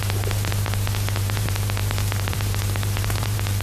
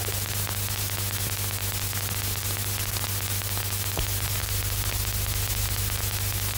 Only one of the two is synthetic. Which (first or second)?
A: first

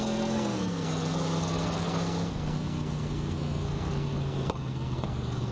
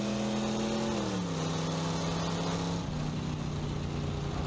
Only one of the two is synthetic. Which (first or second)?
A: first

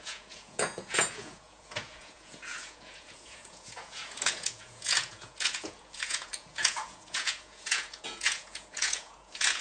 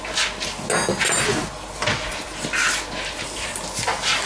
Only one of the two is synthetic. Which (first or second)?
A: first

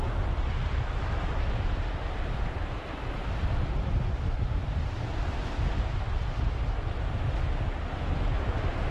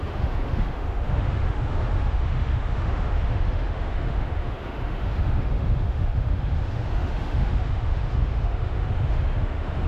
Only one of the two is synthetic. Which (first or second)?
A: second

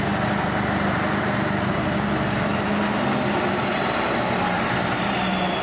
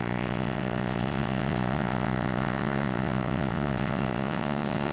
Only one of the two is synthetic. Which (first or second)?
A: second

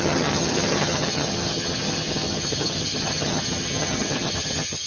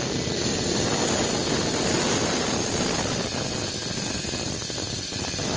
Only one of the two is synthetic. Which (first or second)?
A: first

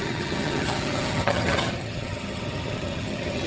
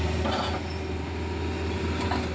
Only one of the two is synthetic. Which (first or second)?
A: first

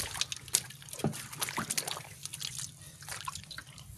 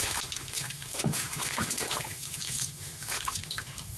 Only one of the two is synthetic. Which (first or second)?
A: second